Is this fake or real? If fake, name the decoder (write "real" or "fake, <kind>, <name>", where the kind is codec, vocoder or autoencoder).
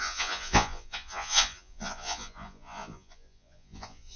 fake, vocoder, Vocos